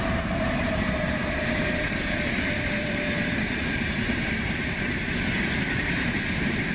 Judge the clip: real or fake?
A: fake